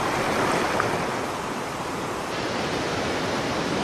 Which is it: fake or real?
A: real